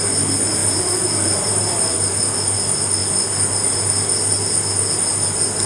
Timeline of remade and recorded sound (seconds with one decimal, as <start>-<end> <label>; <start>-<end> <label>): 0.0-0.6 recorded; 0.6-2.2 remade; 2.2-5.7 recorded